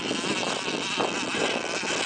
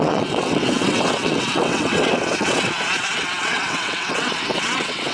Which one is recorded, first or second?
first